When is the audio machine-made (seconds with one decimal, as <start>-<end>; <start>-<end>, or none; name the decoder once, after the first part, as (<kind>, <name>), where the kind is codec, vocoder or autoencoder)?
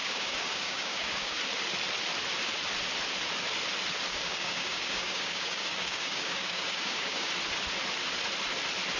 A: 0.0-1.4 (codec, DAC); 4.1-7.3